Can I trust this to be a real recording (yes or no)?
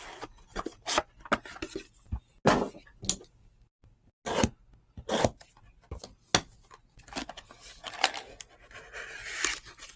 yes